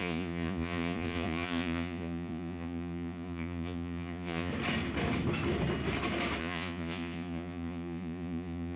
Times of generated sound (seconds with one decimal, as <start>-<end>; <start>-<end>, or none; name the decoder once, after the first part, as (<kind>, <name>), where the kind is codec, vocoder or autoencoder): 0.0-4.5 (vocoder, Vocos); 6.4-8.8

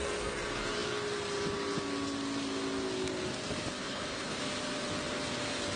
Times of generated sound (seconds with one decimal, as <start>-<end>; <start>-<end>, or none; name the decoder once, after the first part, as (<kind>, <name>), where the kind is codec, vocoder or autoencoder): 3.8-4.4 (codec, HILCodec)

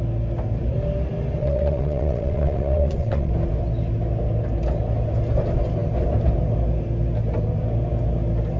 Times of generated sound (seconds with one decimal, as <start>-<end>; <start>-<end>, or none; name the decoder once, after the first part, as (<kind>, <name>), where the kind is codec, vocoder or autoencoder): 1.4-3.3 (vocoder, WaveNeXt)

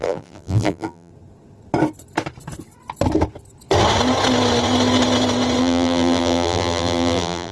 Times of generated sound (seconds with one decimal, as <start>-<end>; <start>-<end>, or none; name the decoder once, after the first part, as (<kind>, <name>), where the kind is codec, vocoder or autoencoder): 0.0-1.1 (vocoder, BigVGAN v2); 5.6-7.5

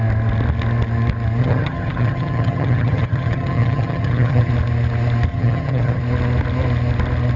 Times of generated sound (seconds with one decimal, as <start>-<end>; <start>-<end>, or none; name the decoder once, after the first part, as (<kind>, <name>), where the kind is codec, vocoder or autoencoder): 1.4-4.5 (vocoder, HiFi-GAN); 5.3-6.0

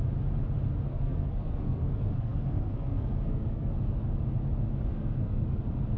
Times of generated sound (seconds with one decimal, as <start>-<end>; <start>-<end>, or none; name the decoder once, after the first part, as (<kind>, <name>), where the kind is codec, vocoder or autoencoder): 0.9-3.7 (codec, SNAC); 4.9-5.6